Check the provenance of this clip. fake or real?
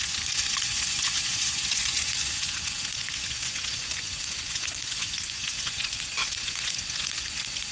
fake